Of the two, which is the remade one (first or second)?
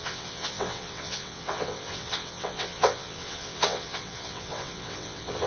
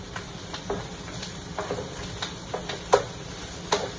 first